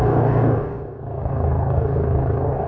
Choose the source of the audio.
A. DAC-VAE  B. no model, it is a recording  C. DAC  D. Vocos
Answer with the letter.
C